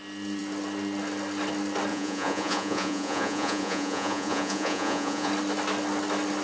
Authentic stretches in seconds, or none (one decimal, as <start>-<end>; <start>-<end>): 0.0-1.9; 5.3-6.4